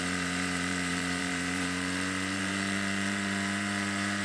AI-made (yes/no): yes